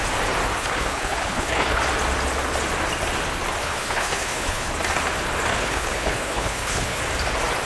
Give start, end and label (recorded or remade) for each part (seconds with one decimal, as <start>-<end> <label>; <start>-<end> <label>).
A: 0.0-0.6 recorded; 0.6-1.8 remade; 1.8-3.6 recorded; 3.6-4.7 remade; 4.7-5.5 recorded; 5.5-7.0 remade; 7.0-7.7 recorded